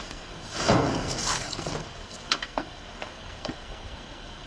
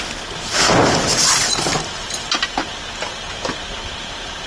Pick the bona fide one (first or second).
second